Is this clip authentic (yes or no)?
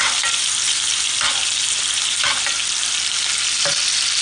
yes